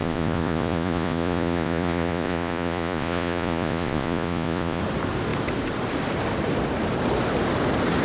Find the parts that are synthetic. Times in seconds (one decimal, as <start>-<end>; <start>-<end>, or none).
0.0-4.8